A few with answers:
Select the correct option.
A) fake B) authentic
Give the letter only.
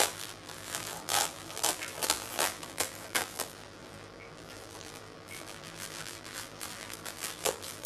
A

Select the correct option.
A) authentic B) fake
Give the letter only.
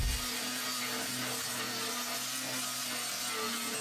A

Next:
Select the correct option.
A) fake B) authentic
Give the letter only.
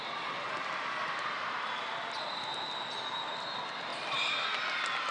A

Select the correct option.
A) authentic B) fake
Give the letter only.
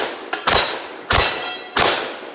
A